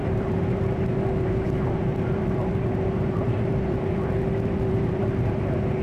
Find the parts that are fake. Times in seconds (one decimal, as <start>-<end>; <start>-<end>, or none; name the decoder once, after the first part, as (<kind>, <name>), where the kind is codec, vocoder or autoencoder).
0.0-1.3 (vocoder, BigVGAN v2); 1.9-5.8